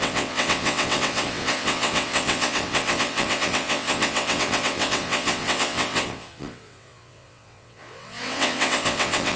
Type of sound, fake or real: fake